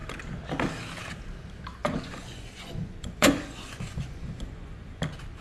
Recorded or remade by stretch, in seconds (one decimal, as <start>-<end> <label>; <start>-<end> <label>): 0.0-1.8 recorded; 1.8-5.0 remade; 5.0-5.4 recorded